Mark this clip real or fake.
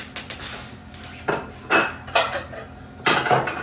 real